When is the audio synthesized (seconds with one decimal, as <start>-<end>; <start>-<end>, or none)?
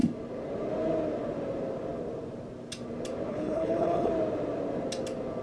3.3-4.1